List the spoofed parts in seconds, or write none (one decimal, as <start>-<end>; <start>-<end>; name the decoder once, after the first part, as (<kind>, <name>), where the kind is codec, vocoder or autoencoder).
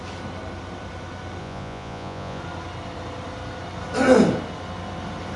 1.4-2.4 (vocoder, Vocos)